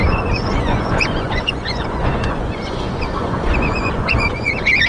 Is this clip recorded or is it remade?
remade